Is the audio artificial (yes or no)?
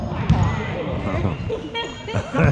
no